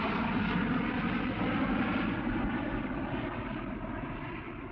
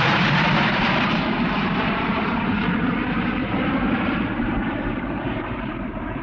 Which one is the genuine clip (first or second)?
first